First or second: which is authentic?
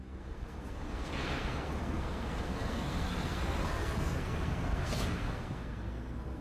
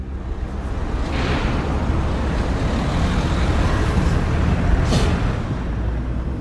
second